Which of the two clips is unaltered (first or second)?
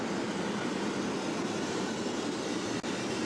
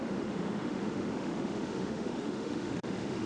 first